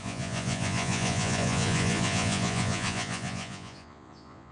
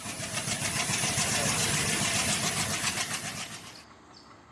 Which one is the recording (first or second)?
second